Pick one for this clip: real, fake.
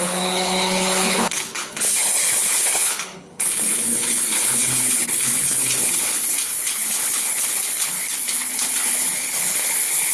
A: fake